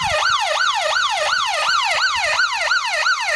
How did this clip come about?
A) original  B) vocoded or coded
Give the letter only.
A